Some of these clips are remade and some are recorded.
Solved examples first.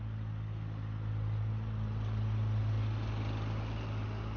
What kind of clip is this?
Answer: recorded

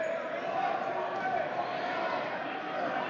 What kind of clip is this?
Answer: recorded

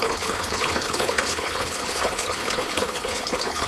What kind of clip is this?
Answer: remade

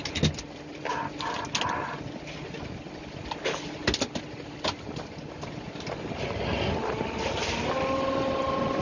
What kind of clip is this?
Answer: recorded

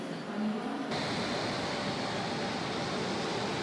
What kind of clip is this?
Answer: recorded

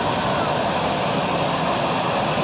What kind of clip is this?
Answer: recorded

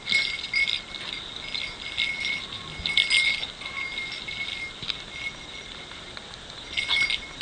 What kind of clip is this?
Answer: recorded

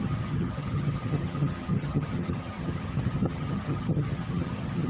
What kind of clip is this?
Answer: remade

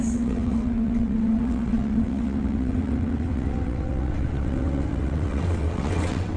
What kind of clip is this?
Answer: remade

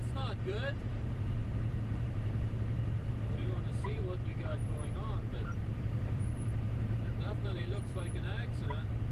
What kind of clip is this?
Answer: remade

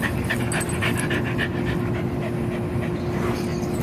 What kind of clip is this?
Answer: recorded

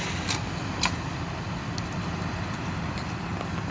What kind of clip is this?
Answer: recorded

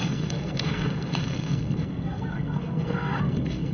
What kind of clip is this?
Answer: remade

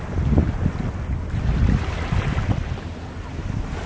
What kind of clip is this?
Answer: recorded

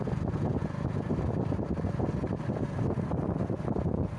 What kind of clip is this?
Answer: recorded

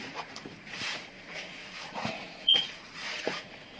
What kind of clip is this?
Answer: remade